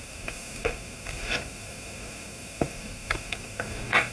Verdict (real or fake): fake